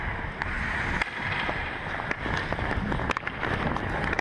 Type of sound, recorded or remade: recorded